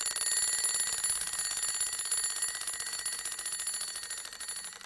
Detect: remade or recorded recorded